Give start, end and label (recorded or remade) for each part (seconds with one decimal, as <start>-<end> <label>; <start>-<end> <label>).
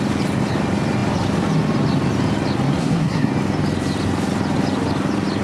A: 0.0-2.8 recorded; 2.8-3.3 remade; 3.3-5.4 recorded